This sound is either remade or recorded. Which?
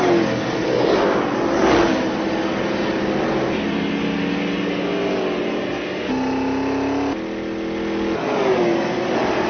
recorded